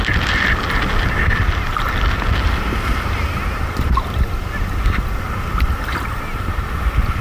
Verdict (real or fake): real